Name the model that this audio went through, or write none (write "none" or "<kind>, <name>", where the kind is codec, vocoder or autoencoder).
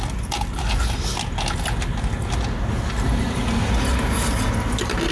none